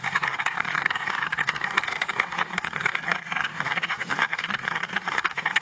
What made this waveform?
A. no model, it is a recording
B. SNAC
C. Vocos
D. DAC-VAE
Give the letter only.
B